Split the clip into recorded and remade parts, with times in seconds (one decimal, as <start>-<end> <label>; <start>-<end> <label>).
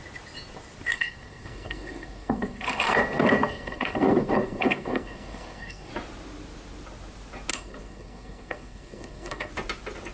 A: 0.0-0.9 recorded; 0.9-5.9 remade; 5.9-7.5 recorded; 7.5-9.5 remade; 9.5-10.1 recorded